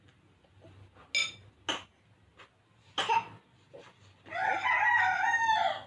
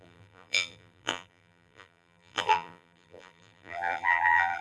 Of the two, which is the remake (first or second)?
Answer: second